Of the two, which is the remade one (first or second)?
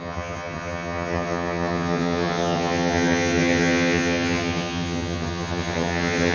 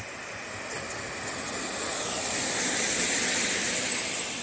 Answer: first